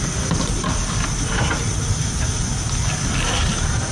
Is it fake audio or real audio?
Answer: real